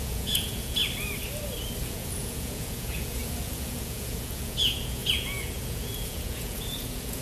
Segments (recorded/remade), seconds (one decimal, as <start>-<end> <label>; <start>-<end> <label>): 0.0-0.8 remade; 0.8-1.8 recorded; 1.8-7.2 remade